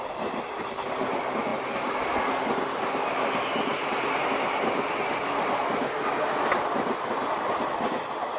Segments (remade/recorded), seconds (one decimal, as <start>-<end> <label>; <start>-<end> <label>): 0.0-8.4 recorded